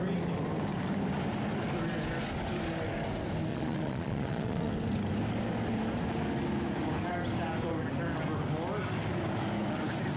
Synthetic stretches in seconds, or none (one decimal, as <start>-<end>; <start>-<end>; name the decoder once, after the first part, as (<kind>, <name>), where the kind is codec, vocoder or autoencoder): 3.5-4.7 (vocoder, Vocos)